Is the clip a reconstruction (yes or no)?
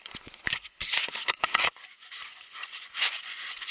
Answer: yes